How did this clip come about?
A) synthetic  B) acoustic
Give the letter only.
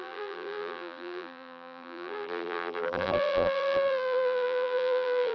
A